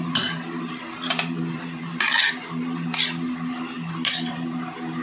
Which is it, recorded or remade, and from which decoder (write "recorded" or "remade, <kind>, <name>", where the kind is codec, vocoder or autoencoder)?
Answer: recorded